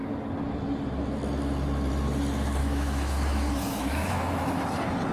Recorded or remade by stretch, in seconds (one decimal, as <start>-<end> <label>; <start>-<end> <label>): 0.0-2.6 recorded; 2.6-4.6 remade; 4.6-5.1 recorded